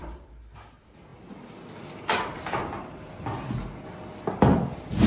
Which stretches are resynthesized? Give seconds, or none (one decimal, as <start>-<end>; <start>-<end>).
none